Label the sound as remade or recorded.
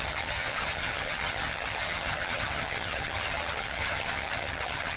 remade